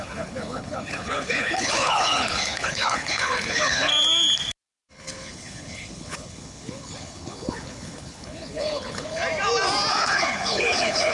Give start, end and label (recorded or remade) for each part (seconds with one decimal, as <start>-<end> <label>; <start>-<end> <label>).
0.0-3.9 remade; 3.9-4.9 recorded; 4.9-9.2 remade; 9.2-9.9 recorded; 9.9-11.1 remade